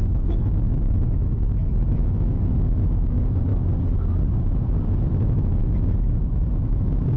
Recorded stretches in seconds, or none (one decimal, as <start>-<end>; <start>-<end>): 3.5-5.1; 5.6-6.5